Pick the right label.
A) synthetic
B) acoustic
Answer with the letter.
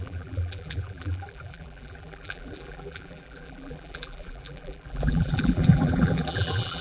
A